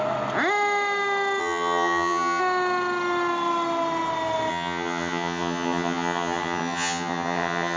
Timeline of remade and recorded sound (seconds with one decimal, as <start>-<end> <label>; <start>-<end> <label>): 0.0-1.4 recorded; 1.4-2.4 remade; 2.4-4.5 recorded; 4.5-7.8 remade